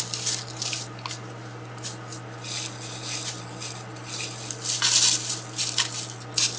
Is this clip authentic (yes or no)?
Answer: yes